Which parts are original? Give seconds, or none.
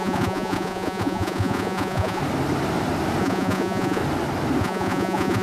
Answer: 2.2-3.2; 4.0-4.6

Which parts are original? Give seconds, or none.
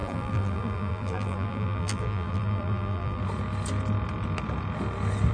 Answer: 3.2-5.3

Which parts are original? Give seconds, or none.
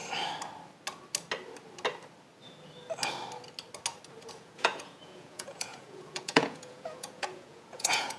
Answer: 0.0-4.3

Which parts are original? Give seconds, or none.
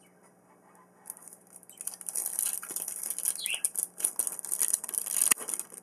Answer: 0.0-5.8